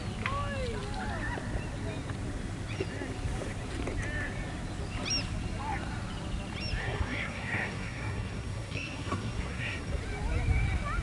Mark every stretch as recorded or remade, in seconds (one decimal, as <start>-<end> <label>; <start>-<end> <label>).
0.0-6.8 recorded; 6.8-10.0 remade; 10.0-11.0 recorded